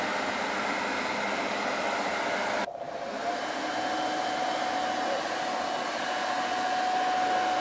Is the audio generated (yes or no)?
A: no